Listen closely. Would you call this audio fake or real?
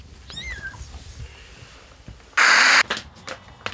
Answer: real